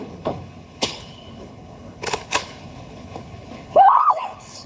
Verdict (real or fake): fake